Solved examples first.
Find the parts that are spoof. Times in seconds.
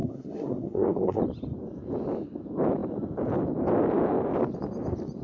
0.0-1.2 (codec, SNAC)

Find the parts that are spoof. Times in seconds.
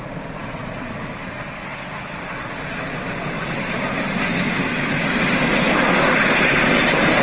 none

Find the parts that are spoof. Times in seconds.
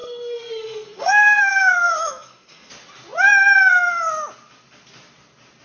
0.0-2.7 (codec, SNAC)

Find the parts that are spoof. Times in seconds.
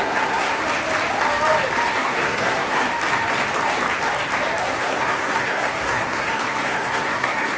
0.0-0.6 (codec, SNAC); 1.9-2.9; 4.6-7.6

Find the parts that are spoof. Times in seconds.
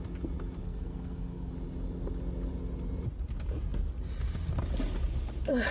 0.6-1.5 (codec, SNAC)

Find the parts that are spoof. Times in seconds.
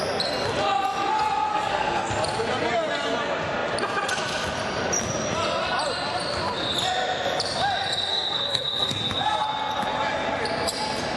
1.5-2.1 (codec, SNAC); 8.1-9.0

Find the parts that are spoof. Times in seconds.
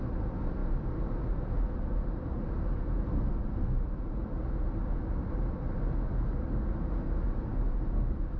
none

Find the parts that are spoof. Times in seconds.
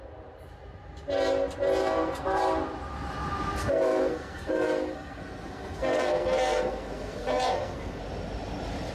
1.8-2.4 (codec, SNAC); 3.6-8.0